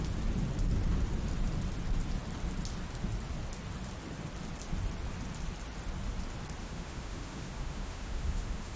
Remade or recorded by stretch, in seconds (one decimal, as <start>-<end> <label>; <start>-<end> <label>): 0.0-6.6 recorded; 6.6-8.8 remade